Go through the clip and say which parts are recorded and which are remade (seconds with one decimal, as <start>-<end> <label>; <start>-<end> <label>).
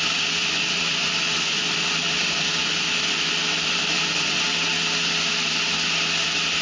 0.0-0.4 recorded; 0.4-4.4 remade; 4.4-6.6 recorded